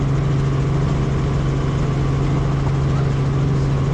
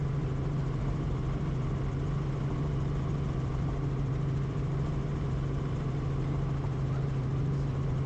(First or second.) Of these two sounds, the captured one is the first